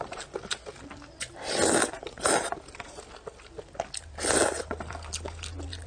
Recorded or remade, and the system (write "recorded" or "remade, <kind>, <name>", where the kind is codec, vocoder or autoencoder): recorded